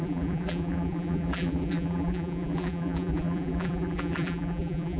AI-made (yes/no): yes